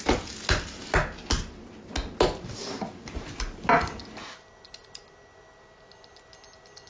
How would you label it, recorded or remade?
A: recorded